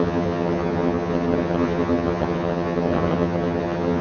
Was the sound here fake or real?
fake